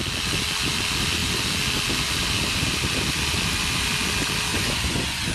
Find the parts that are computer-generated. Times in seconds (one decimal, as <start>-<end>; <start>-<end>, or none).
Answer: 4.5-5.3